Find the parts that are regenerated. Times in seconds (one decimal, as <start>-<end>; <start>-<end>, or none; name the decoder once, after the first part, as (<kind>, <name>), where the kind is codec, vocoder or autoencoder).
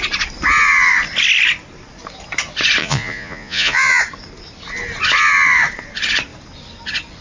2.8-4.0 (vocoder, Vocos)